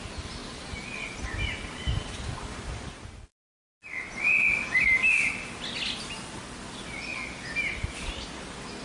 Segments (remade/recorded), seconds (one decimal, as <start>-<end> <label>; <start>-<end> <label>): 0.0-8.8 recorded